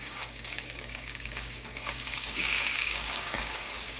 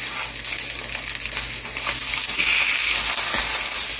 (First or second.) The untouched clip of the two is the second